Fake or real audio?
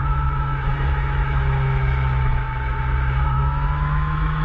fake